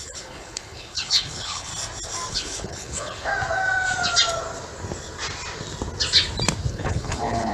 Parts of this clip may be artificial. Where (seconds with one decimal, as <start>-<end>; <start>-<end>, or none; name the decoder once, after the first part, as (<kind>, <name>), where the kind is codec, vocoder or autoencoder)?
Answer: 0.0-1.7 (codec, HILCodec); 2.3-3.3; 6.7-7.5